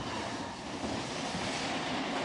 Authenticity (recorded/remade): recorded